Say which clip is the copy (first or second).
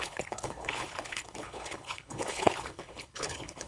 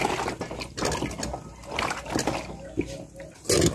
first